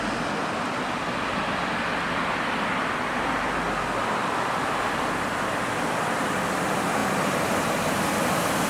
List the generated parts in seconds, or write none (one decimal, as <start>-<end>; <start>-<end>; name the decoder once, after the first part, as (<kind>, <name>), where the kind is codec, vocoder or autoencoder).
none